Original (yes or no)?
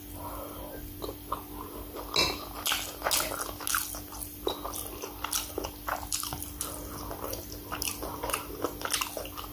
yes